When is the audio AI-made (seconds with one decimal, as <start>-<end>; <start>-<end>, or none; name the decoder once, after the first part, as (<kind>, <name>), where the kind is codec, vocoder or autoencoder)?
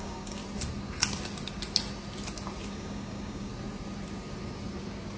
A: 0.0-0.4 (codec, DAC); 2.7-3.5